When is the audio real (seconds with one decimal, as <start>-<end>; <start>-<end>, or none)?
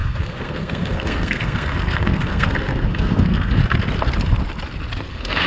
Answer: 3.6-5.1